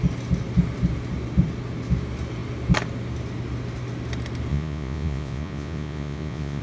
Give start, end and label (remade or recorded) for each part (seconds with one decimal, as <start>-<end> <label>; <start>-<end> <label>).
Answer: 0.0-4.5 recorded; 4.5-6.6 remade